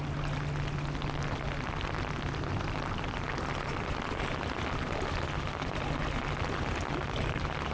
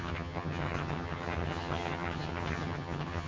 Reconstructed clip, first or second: second